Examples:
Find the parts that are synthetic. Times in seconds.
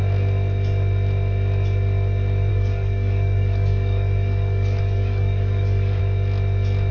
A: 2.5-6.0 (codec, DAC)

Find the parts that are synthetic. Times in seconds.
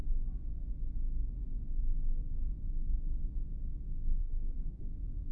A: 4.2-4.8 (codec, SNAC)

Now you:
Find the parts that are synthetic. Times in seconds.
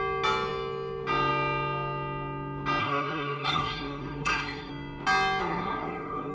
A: 2.8-4.7 (codec, SNAC); 5.4-6.3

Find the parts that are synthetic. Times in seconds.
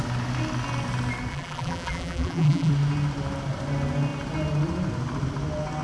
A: 1.3-2.7 (vocoder, BigVGAN v2)